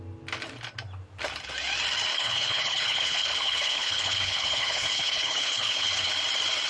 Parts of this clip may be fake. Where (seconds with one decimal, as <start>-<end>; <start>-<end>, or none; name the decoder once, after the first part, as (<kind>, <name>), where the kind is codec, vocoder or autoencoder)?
2.1-6.1 (codec, HILCodec)